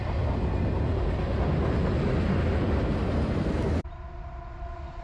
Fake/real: real